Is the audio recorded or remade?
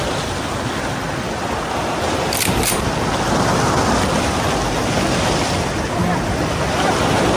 recorded